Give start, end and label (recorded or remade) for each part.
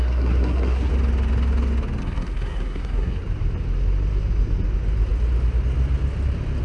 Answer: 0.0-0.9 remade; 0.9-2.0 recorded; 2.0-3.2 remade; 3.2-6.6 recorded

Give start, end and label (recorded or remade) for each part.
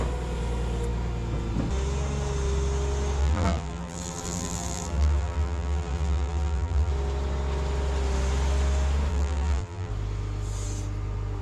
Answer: 0.0-3.2 recorded; 3.2-6.9 remade; 6.9-9.1 recorded; 9.1-9.9 remade; 9.9-11.4 recorded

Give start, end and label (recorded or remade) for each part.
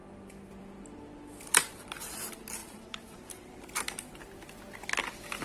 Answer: 0.0-2.6 recorded; 2.6-3.5 remade; 3.5-5.4 recorded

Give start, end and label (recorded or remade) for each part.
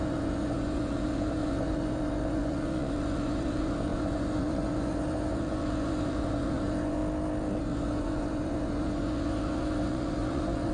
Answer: 0.0-7.0 remade; 7.0-7.6 recorded; 7.6-10.7 remade